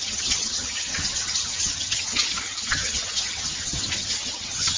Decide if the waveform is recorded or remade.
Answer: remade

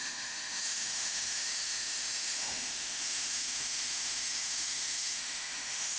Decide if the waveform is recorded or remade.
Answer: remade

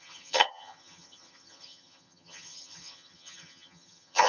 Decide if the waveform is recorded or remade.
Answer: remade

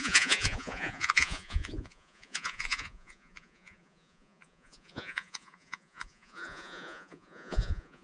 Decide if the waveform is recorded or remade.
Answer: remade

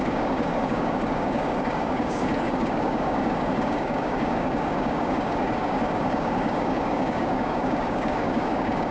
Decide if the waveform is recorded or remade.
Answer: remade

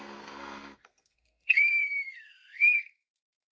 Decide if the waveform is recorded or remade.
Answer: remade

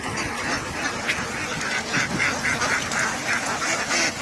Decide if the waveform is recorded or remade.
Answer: recorded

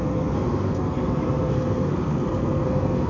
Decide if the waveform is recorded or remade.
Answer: remade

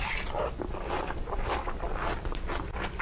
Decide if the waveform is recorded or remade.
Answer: recorded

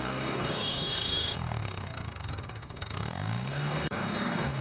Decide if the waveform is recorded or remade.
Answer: remade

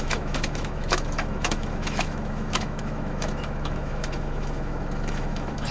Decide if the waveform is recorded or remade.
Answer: remade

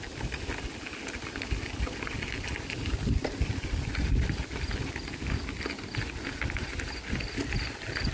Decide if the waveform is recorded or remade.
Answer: recorded